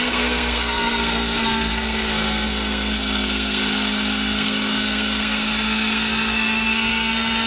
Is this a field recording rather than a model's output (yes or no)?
no